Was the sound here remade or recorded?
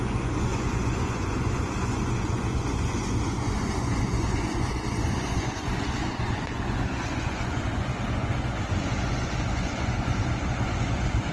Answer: remade